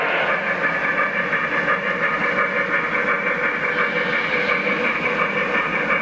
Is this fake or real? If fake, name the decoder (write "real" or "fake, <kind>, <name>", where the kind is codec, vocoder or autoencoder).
real